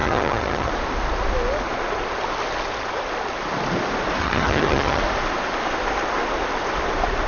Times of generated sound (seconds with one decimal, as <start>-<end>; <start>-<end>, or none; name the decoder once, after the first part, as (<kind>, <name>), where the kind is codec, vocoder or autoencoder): 0.0-0.7 (vocoder, HiFi-GAN); 4.2-5.0